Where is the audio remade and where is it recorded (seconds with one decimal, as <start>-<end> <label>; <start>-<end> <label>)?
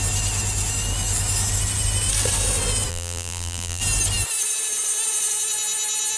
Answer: 0.0-2.9 recorded; 2.9-3.8 remade; 3.8-6.2 recorded